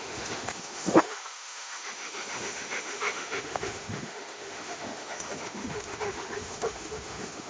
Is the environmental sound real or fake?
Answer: fake